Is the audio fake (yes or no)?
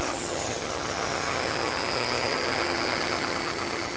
yes